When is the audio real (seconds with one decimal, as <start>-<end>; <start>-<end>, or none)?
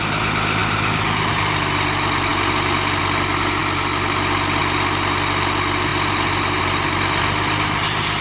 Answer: 0.6-1.3; 2.3-3.0; 5.9-6.6